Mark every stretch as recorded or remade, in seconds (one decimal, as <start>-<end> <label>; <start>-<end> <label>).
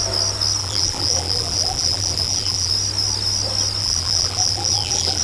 0.0-0.6 recorded; 0.6-2.7 remade; 2.7-3.8 recorded; 3.8-5.2 remade